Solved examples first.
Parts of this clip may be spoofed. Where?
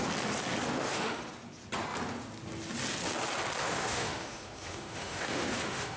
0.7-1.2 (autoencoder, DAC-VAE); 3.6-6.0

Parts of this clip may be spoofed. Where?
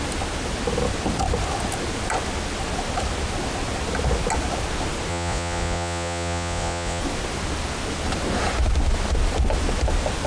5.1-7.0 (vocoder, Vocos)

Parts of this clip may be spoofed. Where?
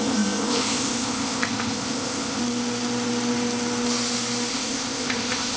0.0-2.4 (codec, ZipCodec); 4.5-5.6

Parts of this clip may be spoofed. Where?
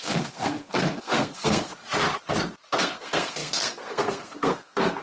0.0-1.7 (codec, SNAC); 2.8-5.0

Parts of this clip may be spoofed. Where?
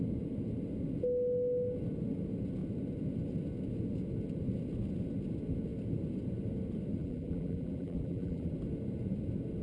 7.0-8.5 (vocoder, BigVGAN v2)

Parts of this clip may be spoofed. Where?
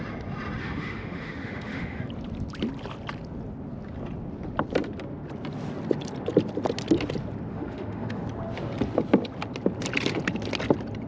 0.6-2.0 (autoencoder, DAC-VAE); 7.5-8.2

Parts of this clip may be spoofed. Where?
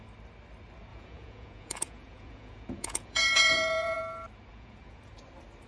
0.9-4.0 (vocoder, Vocos); 4.5-5.1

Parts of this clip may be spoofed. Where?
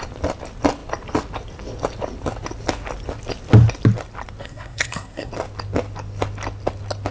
4.4-5.3 (codec, SNAC)